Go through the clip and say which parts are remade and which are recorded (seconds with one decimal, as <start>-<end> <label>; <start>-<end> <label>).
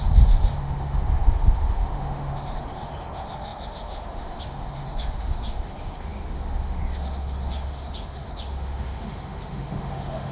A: 0.0-10.3 remade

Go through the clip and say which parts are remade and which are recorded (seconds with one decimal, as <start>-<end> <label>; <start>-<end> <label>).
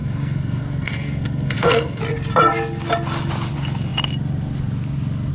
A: 0.0-2.0 remade; 2.0-5.3 recorded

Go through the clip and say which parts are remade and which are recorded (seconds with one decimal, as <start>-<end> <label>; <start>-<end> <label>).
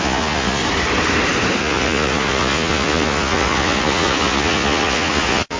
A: 0.0-0.6 remade; 0.6-1.6 recorded; 1.6-5.6 remade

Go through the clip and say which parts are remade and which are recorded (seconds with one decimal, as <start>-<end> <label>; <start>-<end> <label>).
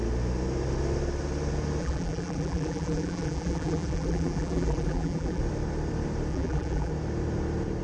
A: 0.0-1.8 recorded; 1.8-5.4 remade; 5.4-6.3 recorded; 6.3-6.9 remade; 6.9-7.8 recorded